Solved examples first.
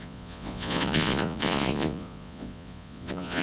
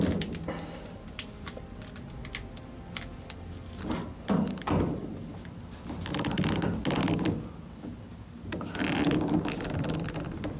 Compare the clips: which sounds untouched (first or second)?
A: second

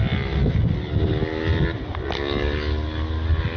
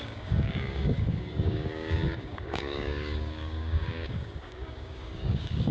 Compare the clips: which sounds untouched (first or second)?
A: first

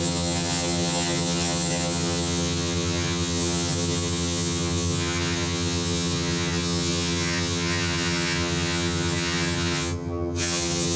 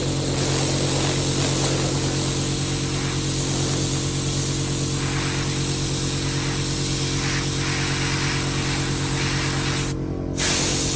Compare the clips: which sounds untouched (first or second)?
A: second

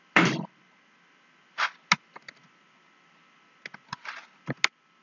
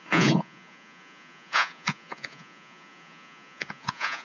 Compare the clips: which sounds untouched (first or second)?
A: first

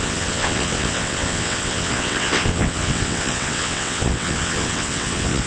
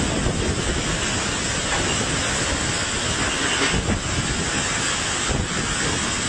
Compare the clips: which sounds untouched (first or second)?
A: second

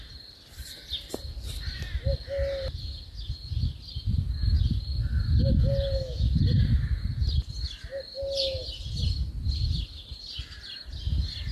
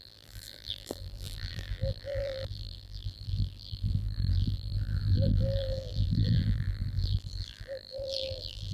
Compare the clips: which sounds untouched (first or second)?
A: first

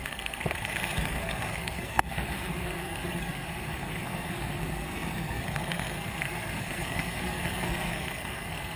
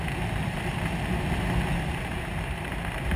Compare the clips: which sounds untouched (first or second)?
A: second